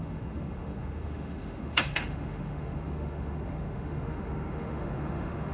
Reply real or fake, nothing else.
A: fake